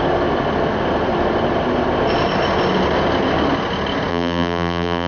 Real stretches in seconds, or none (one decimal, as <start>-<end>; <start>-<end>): 0.0-4.1